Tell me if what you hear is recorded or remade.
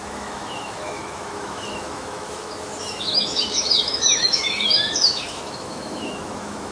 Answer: remade